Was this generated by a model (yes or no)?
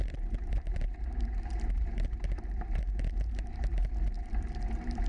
yes